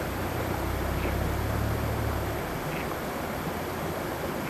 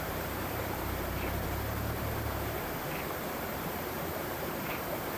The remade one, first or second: second